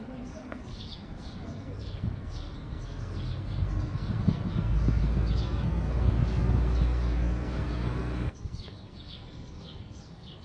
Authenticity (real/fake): fake